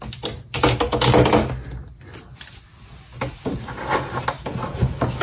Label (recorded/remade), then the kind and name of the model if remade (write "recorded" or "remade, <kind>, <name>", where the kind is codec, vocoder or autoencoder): recorded